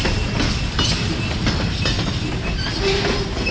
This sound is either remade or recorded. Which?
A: recorded